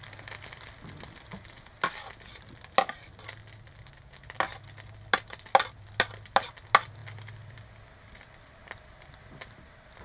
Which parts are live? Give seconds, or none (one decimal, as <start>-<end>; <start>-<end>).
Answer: 0.0-10.0